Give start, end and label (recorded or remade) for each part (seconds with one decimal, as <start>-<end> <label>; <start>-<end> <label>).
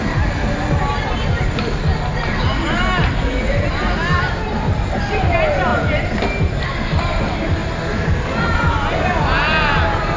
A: 0.0-10.2 recorded